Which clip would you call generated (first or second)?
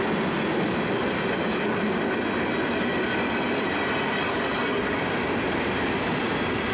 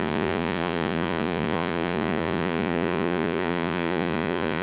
second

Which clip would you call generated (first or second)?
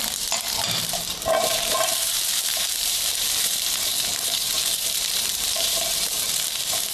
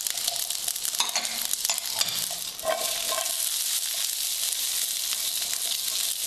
first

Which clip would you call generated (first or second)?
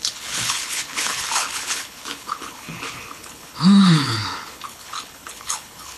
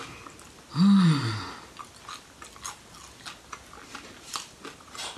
first